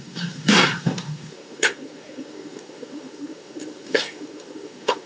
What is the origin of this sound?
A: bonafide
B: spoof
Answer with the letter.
B